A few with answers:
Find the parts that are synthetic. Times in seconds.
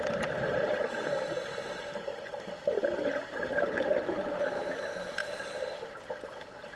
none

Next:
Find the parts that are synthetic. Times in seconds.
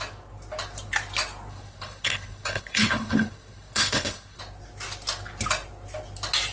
1.5-4.4 (codec, HILCodec)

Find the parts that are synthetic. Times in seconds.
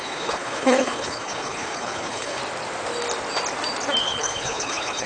0.0-2.4 (codec, HILCodec); 4.0-5.1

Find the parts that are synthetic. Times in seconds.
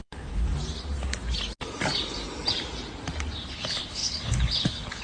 0.0-0.5 (codec, HILCodec); 3.5-5.0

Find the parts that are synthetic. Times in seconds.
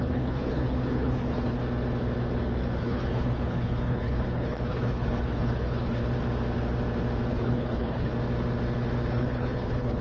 0.0-1.6 (codec, HILCodec); 2.8-6.0; 7.3-8.1; 9.1-10.0